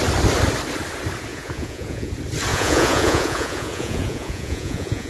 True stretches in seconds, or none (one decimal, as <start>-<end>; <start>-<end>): 0.0-1.3; 2.1-2.5